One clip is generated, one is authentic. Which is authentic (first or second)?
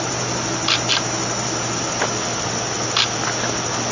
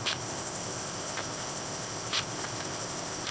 first